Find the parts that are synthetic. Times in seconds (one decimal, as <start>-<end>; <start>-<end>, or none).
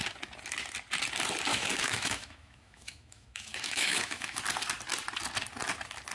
1.5-4.4